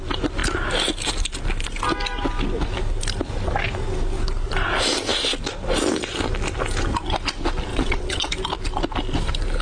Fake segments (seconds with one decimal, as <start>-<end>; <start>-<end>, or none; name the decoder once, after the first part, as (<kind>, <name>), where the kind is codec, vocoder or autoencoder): 7.7-8.3 (vocoder, WaveNeXt)